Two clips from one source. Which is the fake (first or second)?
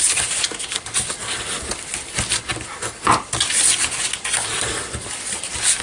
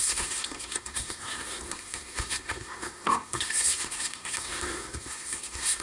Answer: second